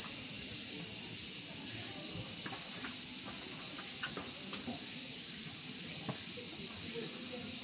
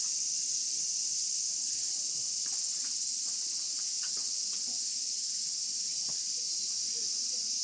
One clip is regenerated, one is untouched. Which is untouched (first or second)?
first